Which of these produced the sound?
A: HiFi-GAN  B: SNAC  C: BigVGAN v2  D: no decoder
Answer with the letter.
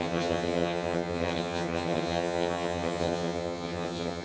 A